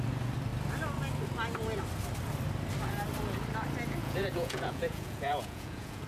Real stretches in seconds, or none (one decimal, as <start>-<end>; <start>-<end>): 0.0-4.0